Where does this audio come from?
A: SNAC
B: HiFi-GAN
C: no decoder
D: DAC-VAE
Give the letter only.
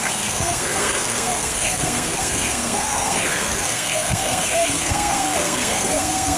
A